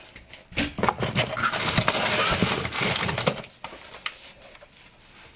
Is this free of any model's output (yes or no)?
yes